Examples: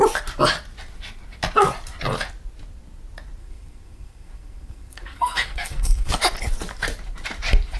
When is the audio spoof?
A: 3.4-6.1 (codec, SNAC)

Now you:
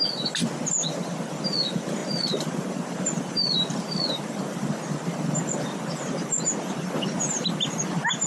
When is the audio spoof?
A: none

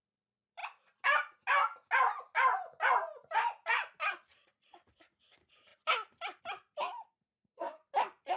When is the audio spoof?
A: 7.1-7.8 (codec, SNAC)

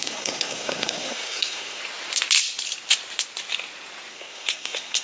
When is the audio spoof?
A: 0.0-1.8 (codec, SNAC); 4.1-5.0

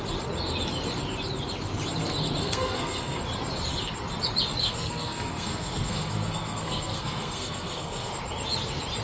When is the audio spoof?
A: 2.4-3.2 (codec, SNAC); 4.6-8.1

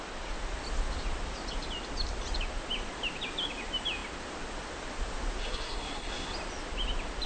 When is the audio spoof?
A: 5.4-6.3 (codec, SNAC)